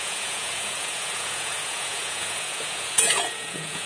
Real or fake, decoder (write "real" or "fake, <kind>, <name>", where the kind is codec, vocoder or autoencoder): fake, vocoder, Vocos